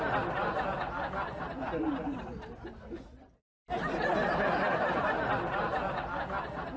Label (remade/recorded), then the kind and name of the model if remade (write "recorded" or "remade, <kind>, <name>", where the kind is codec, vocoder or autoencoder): recorded